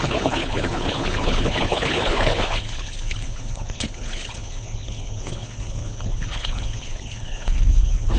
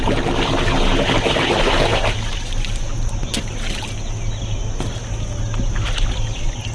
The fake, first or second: first